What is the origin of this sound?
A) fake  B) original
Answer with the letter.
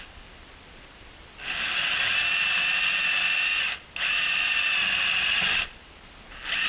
B